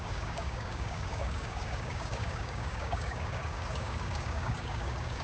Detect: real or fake fake